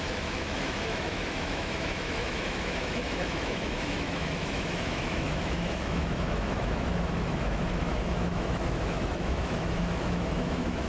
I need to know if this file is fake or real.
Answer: fake